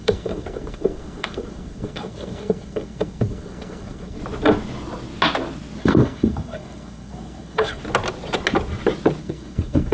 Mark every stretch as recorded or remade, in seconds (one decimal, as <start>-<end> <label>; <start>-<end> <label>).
0.0-4.2 remade; 4.2-5.8 recorded; 5.8-7.8 remade; 7.8-9.2 recorded; 9.2-9.9 remade